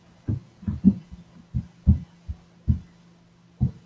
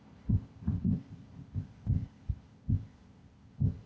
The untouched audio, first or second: first